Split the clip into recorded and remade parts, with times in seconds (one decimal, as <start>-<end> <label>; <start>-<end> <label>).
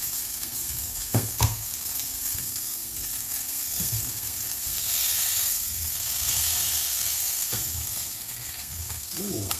0.0-9.6 remade